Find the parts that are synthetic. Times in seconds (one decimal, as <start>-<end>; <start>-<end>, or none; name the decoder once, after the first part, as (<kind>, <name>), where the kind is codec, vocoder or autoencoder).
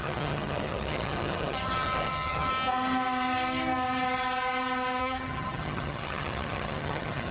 0.0-2.5 (vocoder, HiFi-GAN); 5.0-7.3